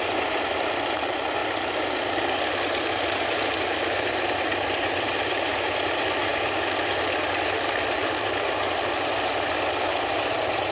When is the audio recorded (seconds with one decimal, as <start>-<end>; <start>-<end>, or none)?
6.3-7.0